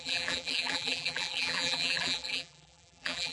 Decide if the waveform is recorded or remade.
remade